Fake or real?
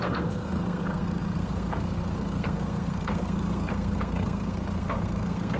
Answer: fake